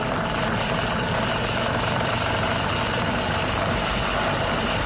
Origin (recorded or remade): remade